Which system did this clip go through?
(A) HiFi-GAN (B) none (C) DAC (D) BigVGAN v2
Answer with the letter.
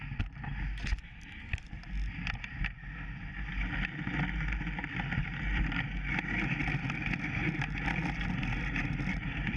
B